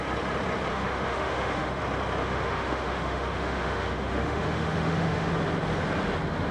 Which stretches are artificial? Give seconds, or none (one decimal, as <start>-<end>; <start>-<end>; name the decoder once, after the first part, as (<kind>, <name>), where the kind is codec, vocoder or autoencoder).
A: 0.7-1.8 (autoencoder, DAC-VAE); 2.2-5.3